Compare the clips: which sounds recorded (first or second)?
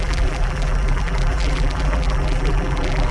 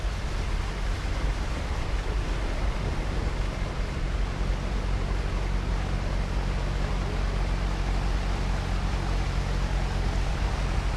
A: second